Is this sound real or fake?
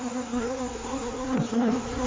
fake